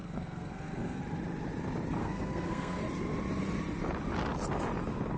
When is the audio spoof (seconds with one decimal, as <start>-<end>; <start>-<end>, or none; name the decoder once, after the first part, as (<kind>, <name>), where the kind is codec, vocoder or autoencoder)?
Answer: 0.0-1.0 (codec, SNAC); 2.0-2.8